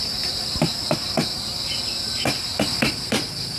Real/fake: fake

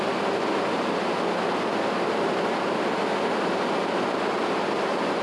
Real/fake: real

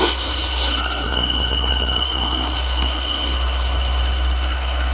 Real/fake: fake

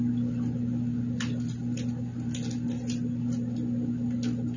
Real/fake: real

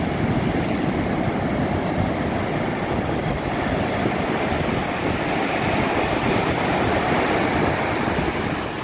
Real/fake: real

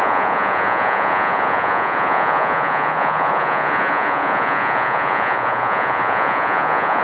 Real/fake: fake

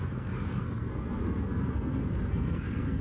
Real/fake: fake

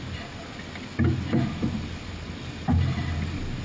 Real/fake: real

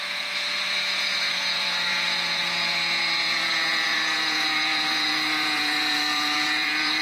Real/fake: fake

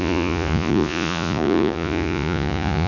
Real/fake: fake